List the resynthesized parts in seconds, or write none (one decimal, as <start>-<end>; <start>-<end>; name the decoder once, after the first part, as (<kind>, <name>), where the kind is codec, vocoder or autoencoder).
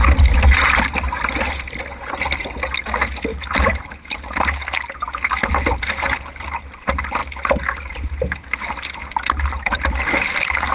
none